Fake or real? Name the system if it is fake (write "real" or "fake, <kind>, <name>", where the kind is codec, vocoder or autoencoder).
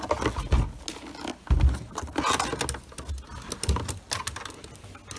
real